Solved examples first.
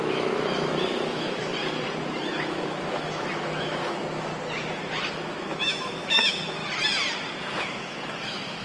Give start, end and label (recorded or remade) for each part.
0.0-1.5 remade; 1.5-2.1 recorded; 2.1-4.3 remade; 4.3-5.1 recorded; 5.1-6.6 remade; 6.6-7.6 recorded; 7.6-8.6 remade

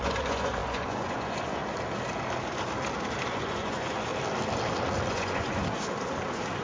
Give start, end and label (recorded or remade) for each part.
0.0-1.6 remade; 1.6-3.3 recorded; 3.3-4.1 remade; 4.1-5.1 recorded; 5.1-5.6 remade; 5.6-6.6 recorded

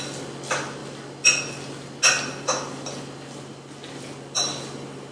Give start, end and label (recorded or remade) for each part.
0.0-5.1 recorded

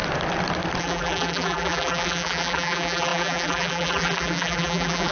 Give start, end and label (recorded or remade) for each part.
0.0-0.8 recorded; 0.8-5.1 remade